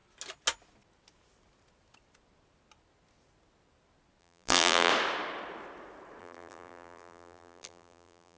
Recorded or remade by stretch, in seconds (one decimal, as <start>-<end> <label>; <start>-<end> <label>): 0.0-4.2 recorded; 4.2-4.9 remade; 4.9-6.2 recorded; 6.2-8.4 remade